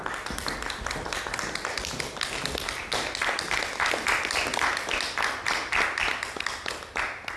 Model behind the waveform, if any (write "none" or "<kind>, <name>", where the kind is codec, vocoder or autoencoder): none